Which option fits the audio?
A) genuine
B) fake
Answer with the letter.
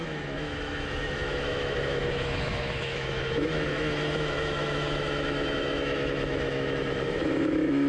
B